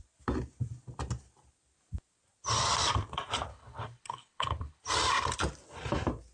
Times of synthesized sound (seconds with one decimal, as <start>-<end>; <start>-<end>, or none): 3.5-4.8